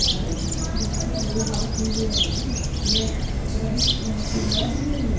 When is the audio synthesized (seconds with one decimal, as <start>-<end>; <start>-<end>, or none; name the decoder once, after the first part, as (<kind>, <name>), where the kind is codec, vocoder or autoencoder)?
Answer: none